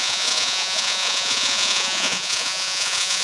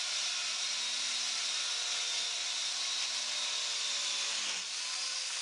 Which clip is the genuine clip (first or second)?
second